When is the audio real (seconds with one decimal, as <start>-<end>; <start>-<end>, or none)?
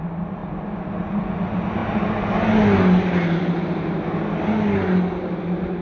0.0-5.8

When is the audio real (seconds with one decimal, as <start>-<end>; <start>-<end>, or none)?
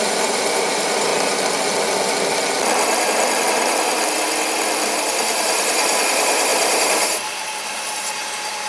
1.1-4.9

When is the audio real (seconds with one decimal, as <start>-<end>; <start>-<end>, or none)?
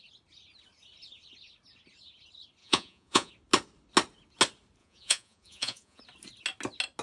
0.0-2.6; 3.3-4.8; 6.0-7.0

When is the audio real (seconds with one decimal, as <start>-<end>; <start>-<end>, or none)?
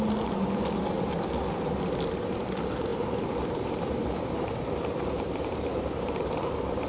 0.0-2.9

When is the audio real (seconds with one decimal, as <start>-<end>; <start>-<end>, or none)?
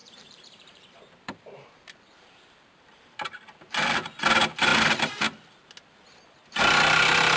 4.2-7.4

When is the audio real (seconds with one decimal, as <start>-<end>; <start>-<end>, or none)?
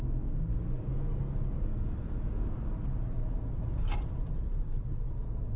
0.0-5.6